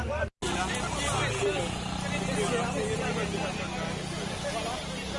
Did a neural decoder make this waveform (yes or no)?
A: no